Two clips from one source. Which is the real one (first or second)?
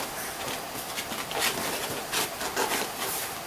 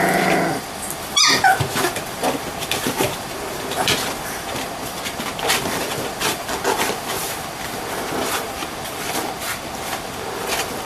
first